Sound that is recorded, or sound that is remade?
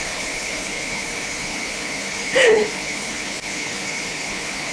remade